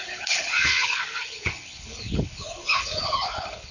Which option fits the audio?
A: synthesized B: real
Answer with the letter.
A